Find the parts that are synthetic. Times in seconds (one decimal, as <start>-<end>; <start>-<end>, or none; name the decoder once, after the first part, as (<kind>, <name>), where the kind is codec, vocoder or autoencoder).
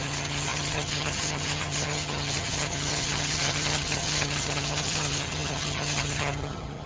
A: 0.0-6.9 (vocoder, HiFi-GAN)